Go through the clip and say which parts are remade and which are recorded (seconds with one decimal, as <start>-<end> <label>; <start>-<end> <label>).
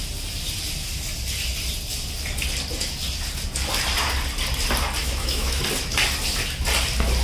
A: 0.0-5.0 recorded; 5.0-5.6 remade; 5.6-7.2 recorded